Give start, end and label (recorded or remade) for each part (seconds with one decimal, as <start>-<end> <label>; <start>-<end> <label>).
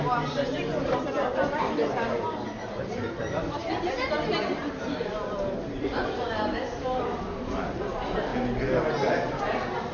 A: 0.0-0.7 remade; 0.7-2.8 recorded; 2.8-8.3 remade; 8.3-9.1 recorded; 9.1-9.9 remade